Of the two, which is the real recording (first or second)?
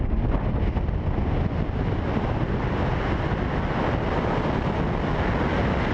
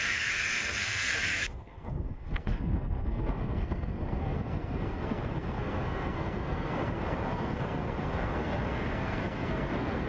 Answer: first